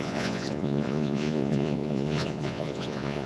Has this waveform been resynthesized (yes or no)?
yes